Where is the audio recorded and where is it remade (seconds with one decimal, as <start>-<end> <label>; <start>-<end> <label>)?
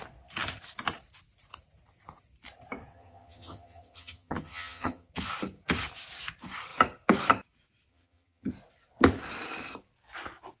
0.0-2.9 recorded; 2.9-5.1 remade; 5.1-7.9 recorded; 7.9-8.5 remade; 8.5-10.6 recorded